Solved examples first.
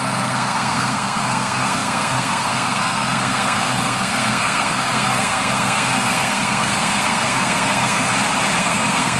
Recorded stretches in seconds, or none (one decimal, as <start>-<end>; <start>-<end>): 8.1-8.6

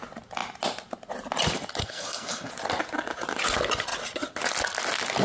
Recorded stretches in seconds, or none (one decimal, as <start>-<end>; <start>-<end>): 0.0-1.8; 2.5-5.2

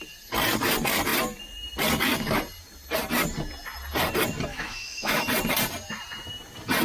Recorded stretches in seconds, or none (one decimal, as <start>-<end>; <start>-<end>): 0.0-4.5; 5.2-6.8

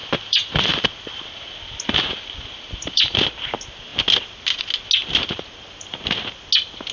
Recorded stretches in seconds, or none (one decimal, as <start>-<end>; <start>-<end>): 3.3-6.9